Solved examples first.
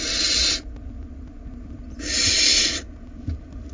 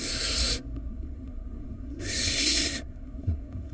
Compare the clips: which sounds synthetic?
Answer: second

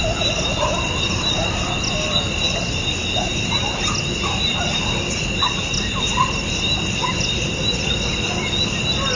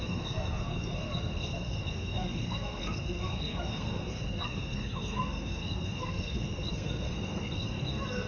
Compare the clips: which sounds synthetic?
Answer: second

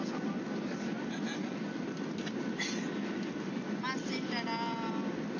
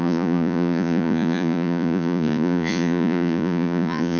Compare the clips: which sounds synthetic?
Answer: second